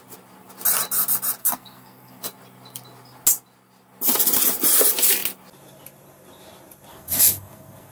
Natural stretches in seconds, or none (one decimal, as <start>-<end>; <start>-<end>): 0.0-1.4; 2.2-6.9